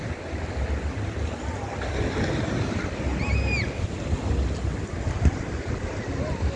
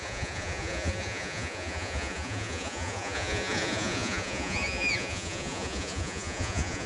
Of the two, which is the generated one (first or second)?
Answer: second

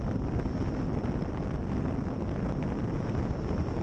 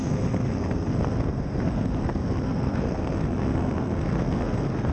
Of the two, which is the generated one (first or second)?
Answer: second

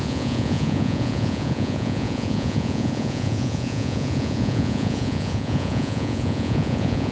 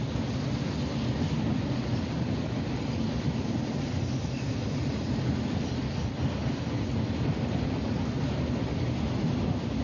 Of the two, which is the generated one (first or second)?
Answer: first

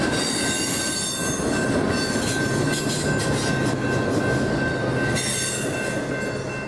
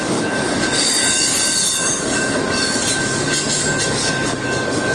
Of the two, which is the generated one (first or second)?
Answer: second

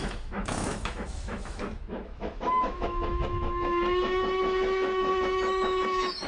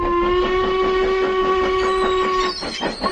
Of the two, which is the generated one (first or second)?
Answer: first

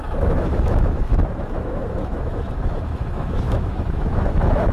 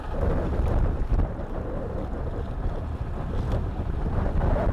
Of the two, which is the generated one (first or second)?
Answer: first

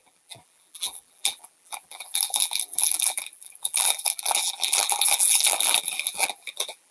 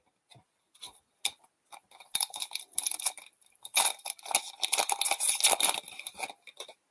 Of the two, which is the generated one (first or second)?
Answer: first